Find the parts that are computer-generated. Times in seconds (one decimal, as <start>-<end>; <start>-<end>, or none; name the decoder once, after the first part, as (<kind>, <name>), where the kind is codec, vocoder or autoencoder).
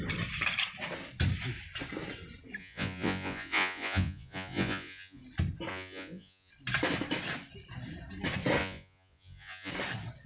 2.6-5.2 (vocoder, Vocos); 5.7-6.5; 8.6-9.7